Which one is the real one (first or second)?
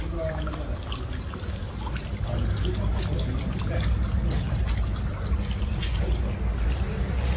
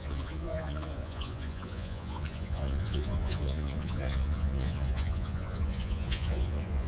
first